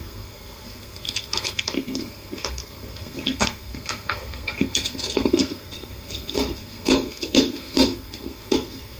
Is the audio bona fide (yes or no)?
no